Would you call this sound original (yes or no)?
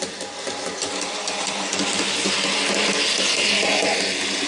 yes